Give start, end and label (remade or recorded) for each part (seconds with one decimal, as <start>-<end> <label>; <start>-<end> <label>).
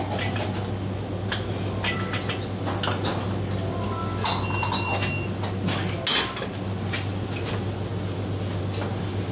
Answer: 0.0-9.3 recorded